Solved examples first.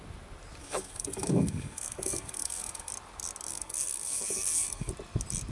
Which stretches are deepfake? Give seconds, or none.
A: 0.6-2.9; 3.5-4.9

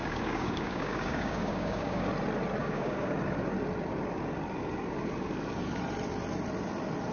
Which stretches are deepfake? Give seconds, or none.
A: 0.0-2.1; 2.6-3.1

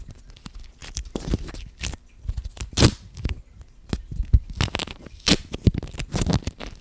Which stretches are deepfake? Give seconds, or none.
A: none

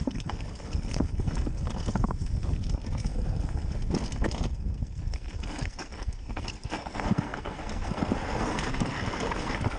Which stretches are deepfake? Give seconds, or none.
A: 0.0-9.8

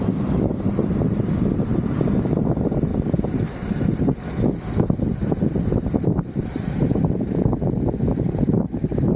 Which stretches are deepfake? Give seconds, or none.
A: 1.7-2.3; 2.9-4.5; 5.5-9.2

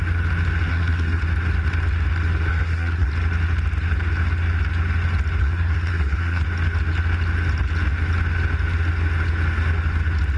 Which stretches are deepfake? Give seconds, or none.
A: 0.7-1.2; 2.5-3.1; 5.4-6.4

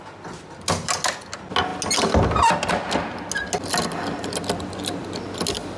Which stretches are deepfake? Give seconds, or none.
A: none